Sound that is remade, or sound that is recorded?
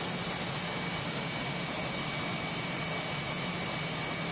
recorded